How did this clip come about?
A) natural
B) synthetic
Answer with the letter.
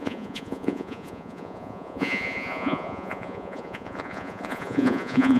B